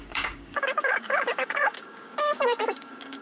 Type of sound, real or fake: fake